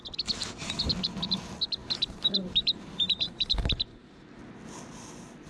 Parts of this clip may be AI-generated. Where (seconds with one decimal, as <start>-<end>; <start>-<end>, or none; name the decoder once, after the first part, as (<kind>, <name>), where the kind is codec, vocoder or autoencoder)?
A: 0.4-1.4 (vocoder, BigVGAN v2); 1.8-4.4